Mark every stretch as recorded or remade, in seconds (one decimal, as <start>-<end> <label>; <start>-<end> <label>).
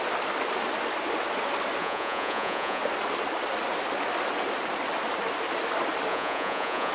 0.0-1.8 recorded; 1.8-2.8 remade; 2.8-6.1 recorded; 6.1-6.9 remade